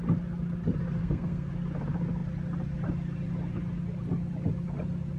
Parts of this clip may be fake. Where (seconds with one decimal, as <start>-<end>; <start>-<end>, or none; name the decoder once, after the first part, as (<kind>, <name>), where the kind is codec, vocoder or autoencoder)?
1.0-1.5 (codec, SNAC)